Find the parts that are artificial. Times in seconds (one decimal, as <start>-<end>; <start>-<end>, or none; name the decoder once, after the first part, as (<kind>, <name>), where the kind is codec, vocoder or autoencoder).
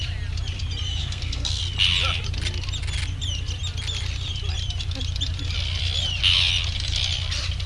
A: 1.0-1.6 (codec, SNAC)